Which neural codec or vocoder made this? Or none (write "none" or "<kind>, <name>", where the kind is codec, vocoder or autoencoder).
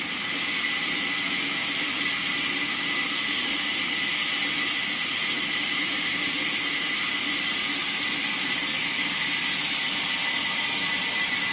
none